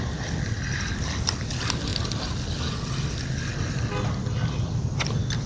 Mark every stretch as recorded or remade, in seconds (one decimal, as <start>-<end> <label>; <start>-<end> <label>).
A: 0.0-5.5 recorded